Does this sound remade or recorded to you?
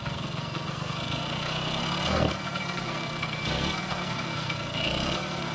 remade